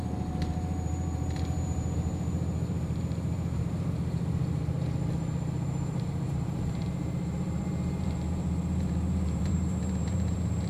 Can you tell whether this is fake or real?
fake